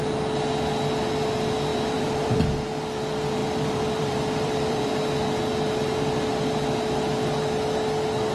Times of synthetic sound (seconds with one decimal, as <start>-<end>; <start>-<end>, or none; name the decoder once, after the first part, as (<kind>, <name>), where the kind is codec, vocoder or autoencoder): 1.7-2.7 (vocoder, BigVGAN v2); 3.4-4.9